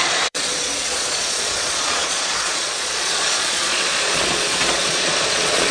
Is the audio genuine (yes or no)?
no